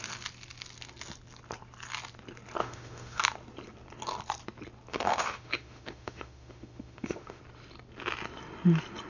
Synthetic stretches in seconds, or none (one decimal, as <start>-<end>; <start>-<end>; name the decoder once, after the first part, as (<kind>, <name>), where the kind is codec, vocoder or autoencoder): 2.6-3.2 (autoencoder, DAC-VAE); 4.9-7.4